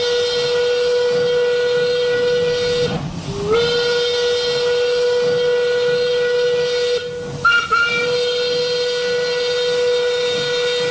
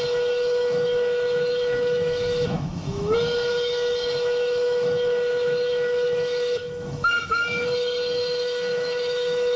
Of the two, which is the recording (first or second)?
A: first